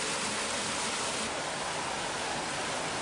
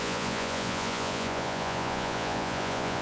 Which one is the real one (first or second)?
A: first